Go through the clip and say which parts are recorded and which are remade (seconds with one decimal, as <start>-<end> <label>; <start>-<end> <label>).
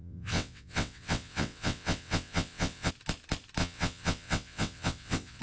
0.0-2.9 remade; 2.9-3.6 recorded; 3.6-5.4 remade